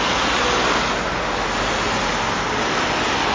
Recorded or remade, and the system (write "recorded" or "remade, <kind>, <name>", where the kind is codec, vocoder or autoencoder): recorded